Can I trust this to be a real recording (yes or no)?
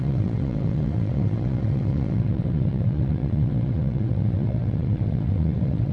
no